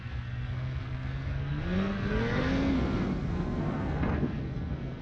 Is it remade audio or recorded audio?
remade